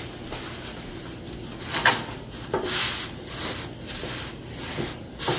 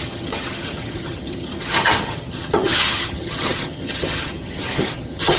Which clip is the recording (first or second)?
first